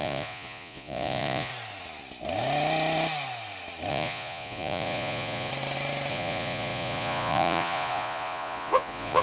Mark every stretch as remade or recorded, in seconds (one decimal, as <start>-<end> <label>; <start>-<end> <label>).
0.0-1.5 remade; 1.5-3.9 recorded; 3.9-5.5 remade; 5.5-6.1 recorded; 6.1-9.2 remade